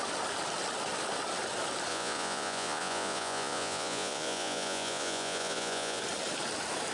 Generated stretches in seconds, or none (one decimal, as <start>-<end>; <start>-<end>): 1.9-6.0